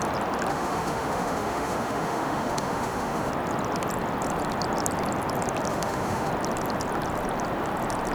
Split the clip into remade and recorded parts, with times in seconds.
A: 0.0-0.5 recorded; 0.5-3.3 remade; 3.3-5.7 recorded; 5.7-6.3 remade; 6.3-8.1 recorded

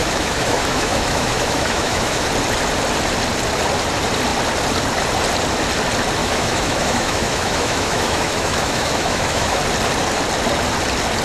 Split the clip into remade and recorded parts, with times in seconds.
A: 0.0-2.3 remade; 2.3-6.2 recorded; 6.2-9.6 remade; 9.6-11.2 recorded